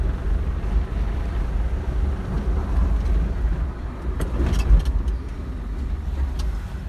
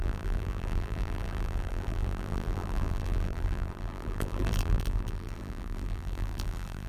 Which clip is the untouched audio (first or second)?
first